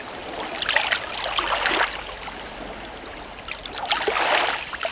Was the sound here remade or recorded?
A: recorded